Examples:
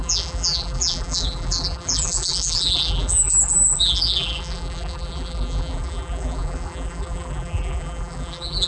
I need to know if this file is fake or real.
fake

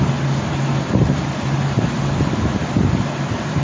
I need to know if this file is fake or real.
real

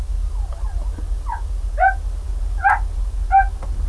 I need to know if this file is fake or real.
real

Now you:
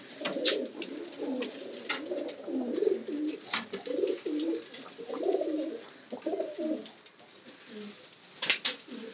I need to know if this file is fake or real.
real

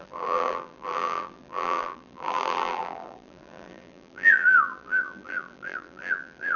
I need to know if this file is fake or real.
fake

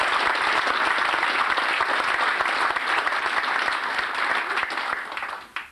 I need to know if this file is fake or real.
real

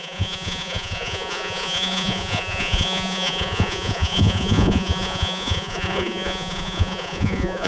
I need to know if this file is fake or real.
fake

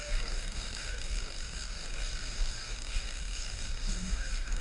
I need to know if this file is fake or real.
fake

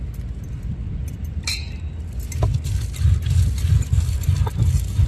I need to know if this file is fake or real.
real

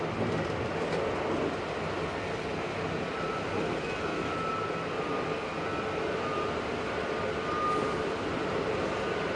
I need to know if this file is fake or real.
real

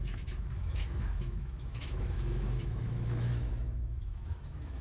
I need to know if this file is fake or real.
fake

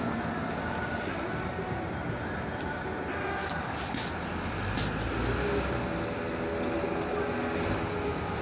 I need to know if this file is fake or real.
real